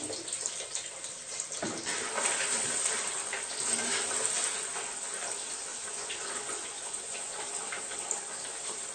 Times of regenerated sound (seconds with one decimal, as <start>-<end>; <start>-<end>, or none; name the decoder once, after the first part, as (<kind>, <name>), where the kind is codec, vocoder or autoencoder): 5.7-7.4 (vocoder, Vocos)